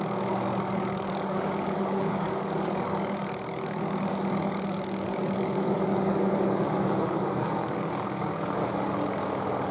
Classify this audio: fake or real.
fake